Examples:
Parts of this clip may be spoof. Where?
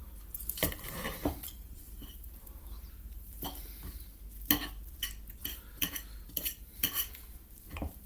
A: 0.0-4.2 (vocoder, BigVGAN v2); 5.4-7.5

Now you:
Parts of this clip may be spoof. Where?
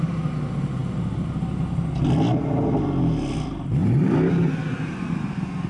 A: 3.8-4.3 (vocoder, BigVGAN v2)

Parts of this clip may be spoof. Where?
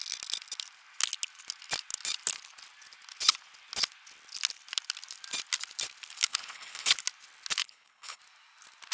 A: 6.3-6.9 (codec, HILCodec); 7.6-8.2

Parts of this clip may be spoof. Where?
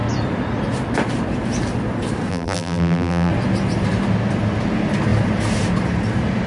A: 2.3-3.3 (vocoder, BigVGAN v2)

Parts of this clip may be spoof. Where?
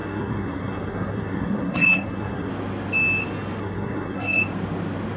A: 0.0-2.5 (codec, SNAC); 3.6-4.4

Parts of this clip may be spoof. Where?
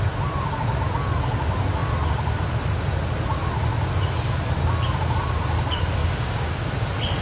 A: 6.0-6.7 (codec, DAC)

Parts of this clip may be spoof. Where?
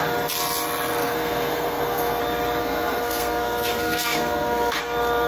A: 1.0-2.2 (codec, SNAC); 2.6-4.8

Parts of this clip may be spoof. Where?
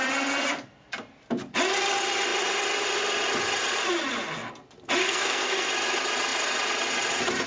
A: 5.0-5.7 (codec, SNAC)